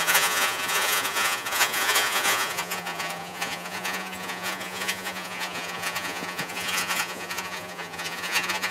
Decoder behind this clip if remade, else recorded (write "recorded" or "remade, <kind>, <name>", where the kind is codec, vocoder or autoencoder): remade, vocoder, Vocos